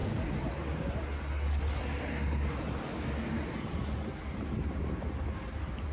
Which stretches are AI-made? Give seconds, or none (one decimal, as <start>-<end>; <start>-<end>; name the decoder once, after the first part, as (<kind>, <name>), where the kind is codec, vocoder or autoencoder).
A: none